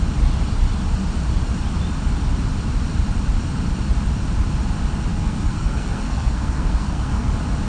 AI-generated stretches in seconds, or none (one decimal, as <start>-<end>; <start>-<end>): 5.1-7.3